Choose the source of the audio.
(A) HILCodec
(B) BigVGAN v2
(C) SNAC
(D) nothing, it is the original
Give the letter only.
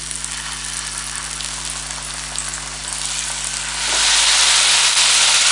D